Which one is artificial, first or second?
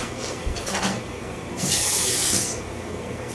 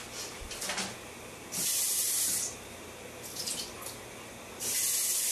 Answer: first